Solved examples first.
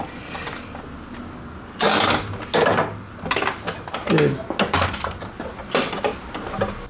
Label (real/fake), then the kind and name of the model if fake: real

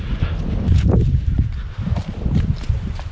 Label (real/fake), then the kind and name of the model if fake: real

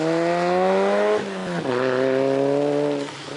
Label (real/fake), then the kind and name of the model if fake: real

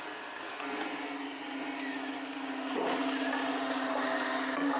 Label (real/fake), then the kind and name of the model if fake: real